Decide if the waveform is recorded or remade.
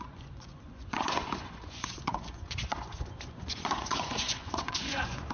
remade